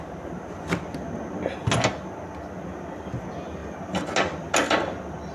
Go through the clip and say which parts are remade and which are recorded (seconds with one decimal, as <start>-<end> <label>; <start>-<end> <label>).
0.0-5.3 recorded